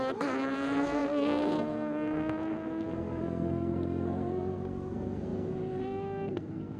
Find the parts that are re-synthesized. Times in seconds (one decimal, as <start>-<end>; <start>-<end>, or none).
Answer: 0.0-6.8